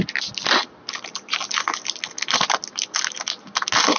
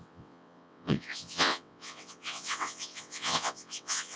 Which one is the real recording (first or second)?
first